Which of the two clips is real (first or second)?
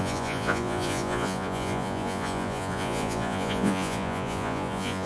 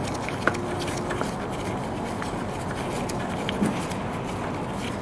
second